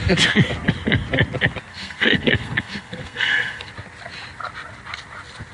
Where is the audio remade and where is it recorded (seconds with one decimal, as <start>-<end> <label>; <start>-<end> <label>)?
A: 0.0-1.7 recorded; 1.7-3.7 remade; 3.7-5.5 recorded